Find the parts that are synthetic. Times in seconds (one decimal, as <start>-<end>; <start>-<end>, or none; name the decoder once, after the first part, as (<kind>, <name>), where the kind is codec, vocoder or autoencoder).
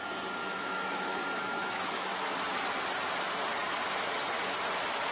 0.4-2.3 (autoencoder, DAC-VAE)